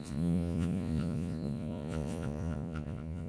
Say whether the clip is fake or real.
fake